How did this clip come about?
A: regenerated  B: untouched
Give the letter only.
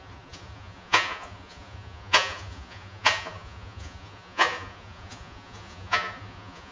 A